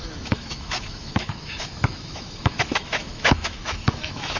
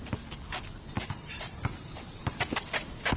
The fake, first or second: first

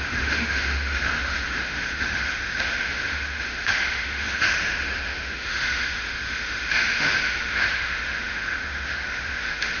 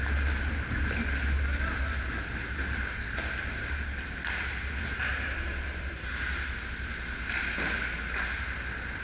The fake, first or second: first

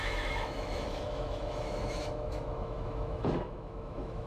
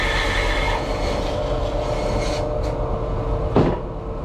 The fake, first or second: first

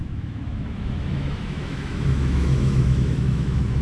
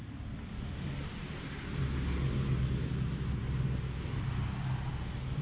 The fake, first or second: first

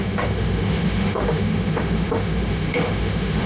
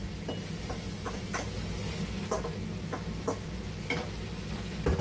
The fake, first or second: first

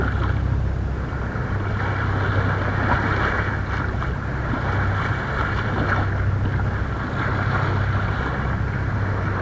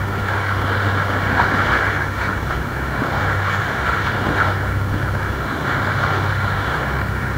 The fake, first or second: second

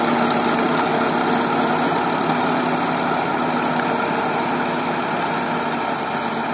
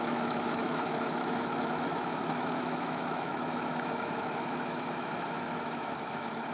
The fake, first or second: second